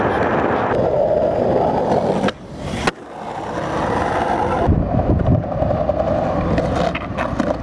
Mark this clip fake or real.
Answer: real